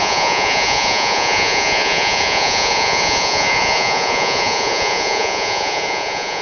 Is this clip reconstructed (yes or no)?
yes